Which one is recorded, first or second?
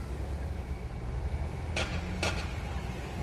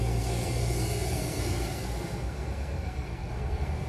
first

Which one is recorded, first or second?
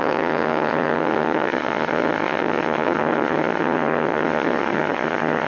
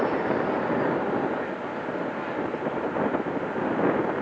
second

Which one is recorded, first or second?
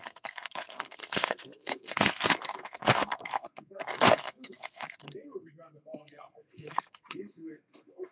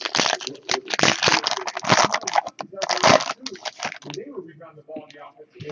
second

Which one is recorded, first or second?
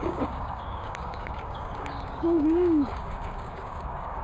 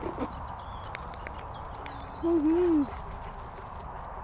second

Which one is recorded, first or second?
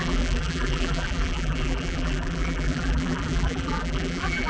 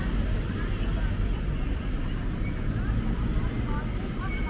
second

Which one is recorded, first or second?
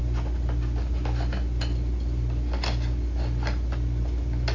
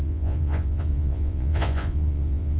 first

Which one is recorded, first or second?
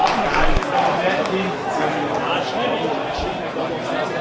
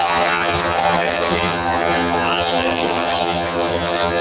first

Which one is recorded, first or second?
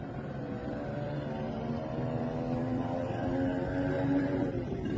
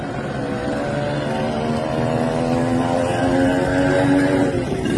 second